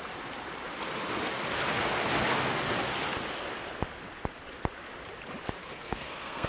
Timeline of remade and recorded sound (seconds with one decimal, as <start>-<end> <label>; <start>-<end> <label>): 0.0-5.6 recorded; 5.6-6.5 remade

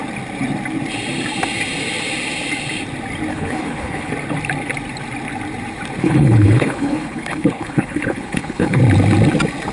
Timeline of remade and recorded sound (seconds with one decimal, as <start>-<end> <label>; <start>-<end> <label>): 0.0-3.3 recorded; 3.3-4.1 remade; 4.1-6.0 recorded; 6.0-8.8 remade; 8.8-9.7 recorded

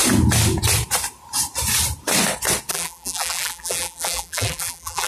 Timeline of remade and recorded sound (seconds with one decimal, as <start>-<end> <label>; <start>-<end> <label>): 0.0-2.7 recorded; 2.7-5.1 remade

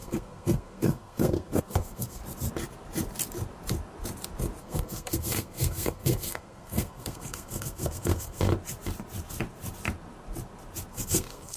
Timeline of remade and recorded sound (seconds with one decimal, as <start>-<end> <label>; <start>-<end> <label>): 0.0-2.2 remade; 2.2-4.6 recorded; 4.6-8.5 remade; 8.5-10.9 recorded; 10.9-11.6 remade

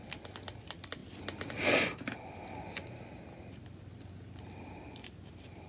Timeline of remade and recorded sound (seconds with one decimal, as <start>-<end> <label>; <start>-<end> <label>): 0.0-5.7 recorded